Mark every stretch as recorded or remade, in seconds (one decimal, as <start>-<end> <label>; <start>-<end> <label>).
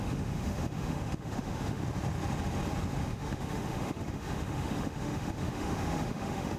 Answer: 0.0-1.8 remade; 1.8-3.0 recorded; 3.0-6.6 remade